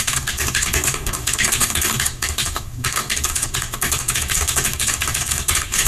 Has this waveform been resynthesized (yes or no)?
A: yes